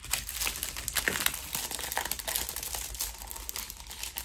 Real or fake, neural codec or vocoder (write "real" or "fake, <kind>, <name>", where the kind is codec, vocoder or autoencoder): real